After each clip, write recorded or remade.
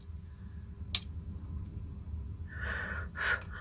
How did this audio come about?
recorded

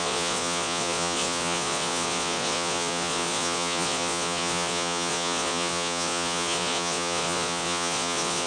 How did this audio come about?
remade